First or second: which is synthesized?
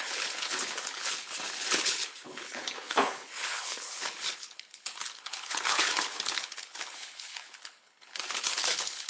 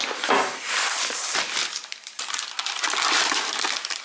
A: first